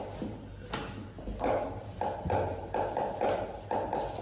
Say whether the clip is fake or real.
real